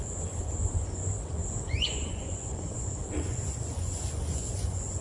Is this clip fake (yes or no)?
yes